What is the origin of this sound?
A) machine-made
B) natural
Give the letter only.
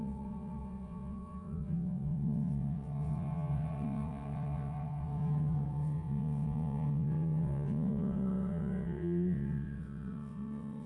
A